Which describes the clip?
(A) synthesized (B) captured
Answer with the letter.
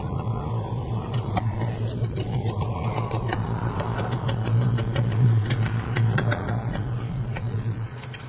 A